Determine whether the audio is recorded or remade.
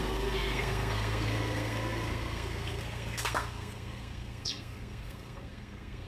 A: remade